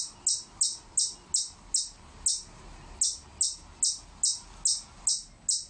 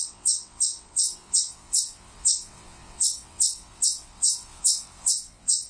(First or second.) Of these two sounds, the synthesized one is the second